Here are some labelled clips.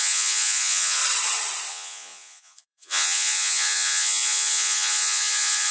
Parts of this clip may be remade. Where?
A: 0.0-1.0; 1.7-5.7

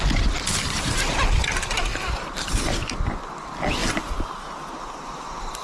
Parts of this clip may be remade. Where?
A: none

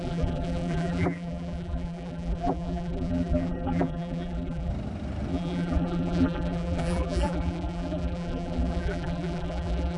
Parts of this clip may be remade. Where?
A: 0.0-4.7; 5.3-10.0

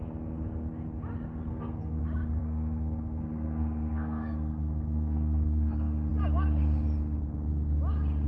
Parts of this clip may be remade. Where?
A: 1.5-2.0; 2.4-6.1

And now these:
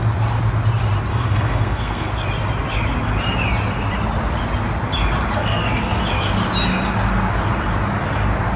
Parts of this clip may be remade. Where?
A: 1.1-2.1; 5.4-6.0

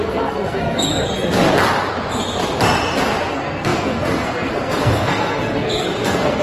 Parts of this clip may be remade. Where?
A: 0.0-0.9; 3.3-6.4